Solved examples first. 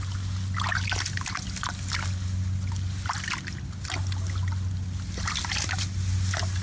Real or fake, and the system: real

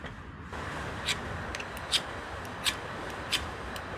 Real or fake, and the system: real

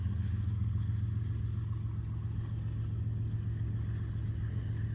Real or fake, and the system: real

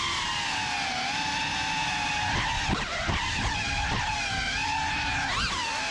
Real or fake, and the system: real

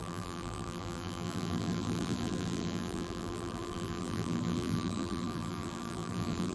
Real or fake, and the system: fake, vocoder, BigVGAN v2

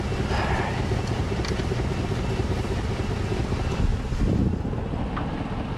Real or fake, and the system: real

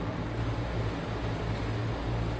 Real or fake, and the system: real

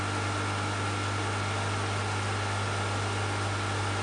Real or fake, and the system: real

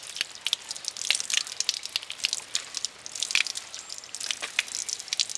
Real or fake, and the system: real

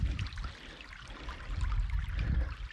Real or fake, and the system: real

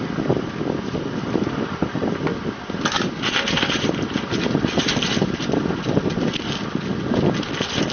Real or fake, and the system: real